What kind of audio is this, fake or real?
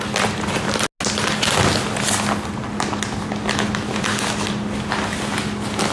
real